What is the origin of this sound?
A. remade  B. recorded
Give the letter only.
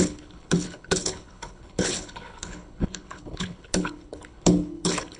A